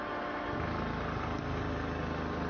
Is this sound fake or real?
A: real